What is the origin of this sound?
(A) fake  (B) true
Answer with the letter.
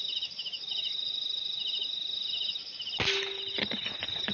B